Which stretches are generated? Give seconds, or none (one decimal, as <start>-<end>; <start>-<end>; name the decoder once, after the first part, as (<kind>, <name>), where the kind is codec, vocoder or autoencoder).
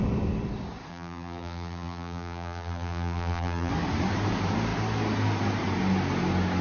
0.9-3.7 (vocoder, BigVGAN v2)